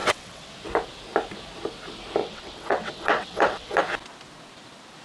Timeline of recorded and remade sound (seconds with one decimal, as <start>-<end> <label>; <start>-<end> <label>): 0.0-0.5 remade; 0.5-2.2 recorded; 2.2-3.8 remade; 3.8-5.0 recorded

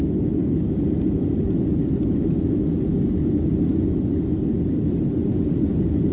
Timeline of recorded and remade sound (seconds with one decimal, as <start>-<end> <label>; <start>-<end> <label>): 0.0-6.1 recorded